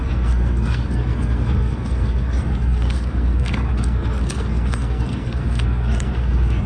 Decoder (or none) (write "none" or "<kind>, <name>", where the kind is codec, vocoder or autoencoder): codec, SNAC